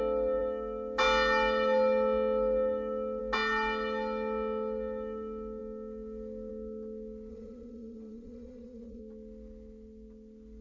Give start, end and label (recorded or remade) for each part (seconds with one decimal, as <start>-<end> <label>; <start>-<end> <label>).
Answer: 0.0-7.3 recorded; 7.3-9.0 remade; 9.0-10.6 recorded